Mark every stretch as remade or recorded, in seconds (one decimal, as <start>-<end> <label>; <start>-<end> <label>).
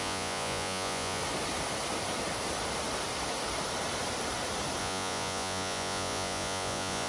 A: 0.0-1.2 remade; 1.2-4.8 recorded; 4.8-7.1 remade